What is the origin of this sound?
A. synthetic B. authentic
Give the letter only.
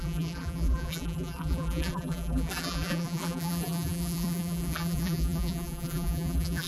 A